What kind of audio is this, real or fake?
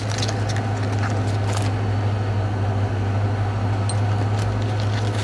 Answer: real